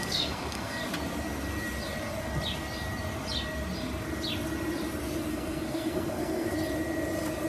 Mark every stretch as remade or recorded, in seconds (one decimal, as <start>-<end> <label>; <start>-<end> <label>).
0.0-0.8 remade; 0.8-5.3 recorded; 5.3-6.5 remade; 6.5-7.5 recorded